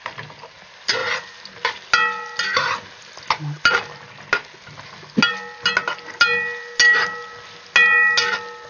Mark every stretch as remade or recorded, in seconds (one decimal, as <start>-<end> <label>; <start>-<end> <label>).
0.0-8.7 recorded